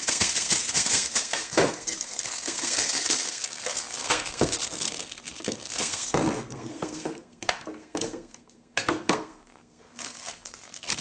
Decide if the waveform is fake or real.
fake